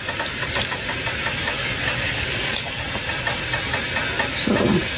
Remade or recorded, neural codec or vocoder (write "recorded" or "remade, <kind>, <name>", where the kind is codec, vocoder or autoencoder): recorded